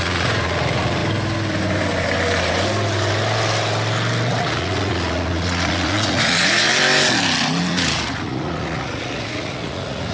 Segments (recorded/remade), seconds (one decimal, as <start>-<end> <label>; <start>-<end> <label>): 0.0-1.0 remade; 1.0-4.3 recorded; 4.3-6.7 remade; 6.7-7.6 recorded; 7.6-10.1 remade

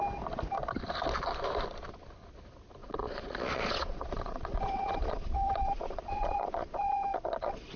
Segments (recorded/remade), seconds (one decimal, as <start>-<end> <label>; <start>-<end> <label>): 0.0-2.8 recorded; 2.8-7.8 remade

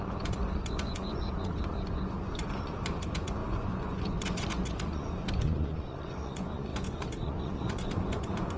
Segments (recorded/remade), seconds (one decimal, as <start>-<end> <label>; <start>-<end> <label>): 0.0-8.6 remade

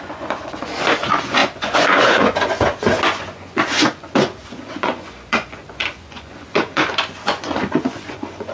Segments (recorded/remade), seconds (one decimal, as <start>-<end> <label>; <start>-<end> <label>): 0.0-8.5 remade

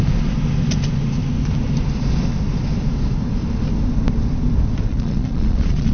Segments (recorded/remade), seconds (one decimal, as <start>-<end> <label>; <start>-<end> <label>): 0.0-4.9 recorded; 4.9-5.9 remade

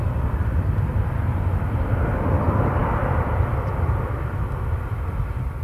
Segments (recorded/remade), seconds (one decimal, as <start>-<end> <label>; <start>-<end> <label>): 0.0-5.6 recorded